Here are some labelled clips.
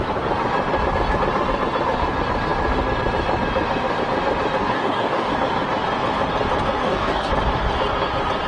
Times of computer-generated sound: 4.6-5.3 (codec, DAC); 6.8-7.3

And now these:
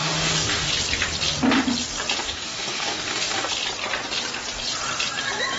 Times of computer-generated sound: 0.0-0.7 (codec, DAC); 2.2-3.5